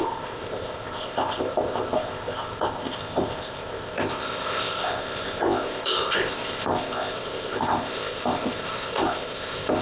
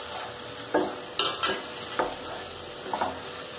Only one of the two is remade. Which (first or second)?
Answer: first